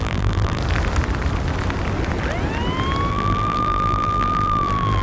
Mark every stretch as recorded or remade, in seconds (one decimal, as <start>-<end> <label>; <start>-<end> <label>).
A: 0.0-0.6 remade; 0.6-3.1 recorded; 3.1-5.0 remade